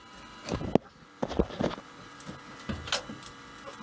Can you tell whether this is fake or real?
real